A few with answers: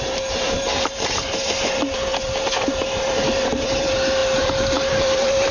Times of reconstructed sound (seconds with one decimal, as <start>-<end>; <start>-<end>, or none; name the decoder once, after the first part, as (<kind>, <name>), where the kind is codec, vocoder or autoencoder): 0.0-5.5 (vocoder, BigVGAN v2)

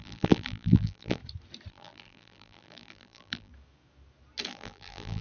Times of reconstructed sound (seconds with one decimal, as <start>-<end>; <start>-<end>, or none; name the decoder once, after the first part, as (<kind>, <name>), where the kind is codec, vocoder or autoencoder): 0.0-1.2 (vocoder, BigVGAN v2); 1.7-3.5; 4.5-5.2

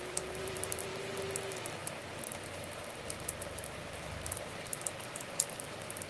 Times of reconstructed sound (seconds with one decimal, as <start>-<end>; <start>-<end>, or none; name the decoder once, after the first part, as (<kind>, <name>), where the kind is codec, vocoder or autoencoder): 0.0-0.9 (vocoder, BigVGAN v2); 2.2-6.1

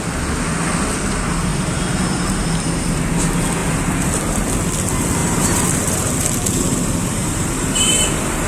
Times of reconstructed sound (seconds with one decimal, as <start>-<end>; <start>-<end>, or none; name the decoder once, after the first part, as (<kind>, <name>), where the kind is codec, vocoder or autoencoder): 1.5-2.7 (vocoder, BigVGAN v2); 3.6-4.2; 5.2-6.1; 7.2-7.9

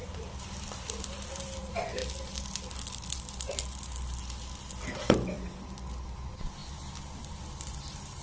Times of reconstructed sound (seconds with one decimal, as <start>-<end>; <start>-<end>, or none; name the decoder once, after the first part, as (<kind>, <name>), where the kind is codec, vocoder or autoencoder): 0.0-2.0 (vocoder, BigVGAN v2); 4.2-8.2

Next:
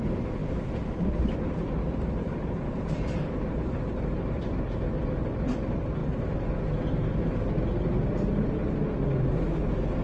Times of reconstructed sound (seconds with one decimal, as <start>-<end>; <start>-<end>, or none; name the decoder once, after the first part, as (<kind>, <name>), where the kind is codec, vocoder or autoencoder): 0.4-1.3 (vocoder, BigVGAN v2); 1.8-4.9